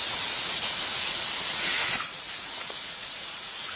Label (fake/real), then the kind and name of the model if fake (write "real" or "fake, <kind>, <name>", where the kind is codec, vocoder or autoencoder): fake, vocoder, Vocos